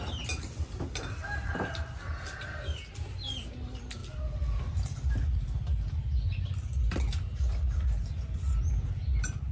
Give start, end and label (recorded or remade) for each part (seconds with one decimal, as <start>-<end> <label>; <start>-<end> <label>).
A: 0.0-9.5 recorded